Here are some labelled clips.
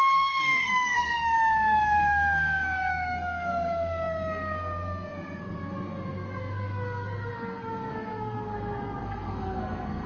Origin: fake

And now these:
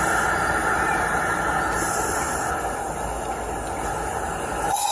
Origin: real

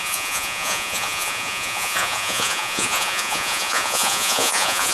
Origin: fake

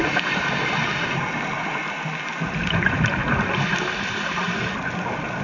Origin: real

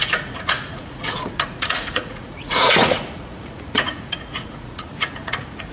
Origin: fake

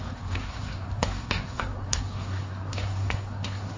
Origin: fake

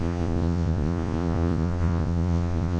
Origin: fake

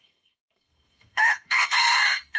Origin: fake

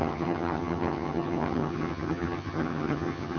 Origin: fake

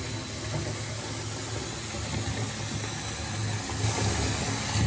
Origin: real